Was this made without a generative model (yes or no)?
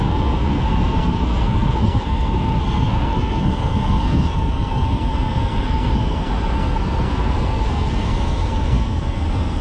no